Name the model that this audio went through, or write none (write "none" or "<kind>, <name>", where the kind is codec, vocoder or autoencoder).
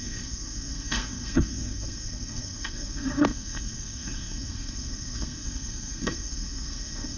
codec, SNAC